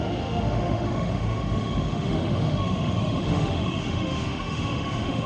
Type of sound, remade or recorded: remade